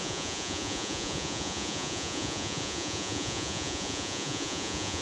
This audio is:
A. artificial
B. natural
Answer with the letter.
A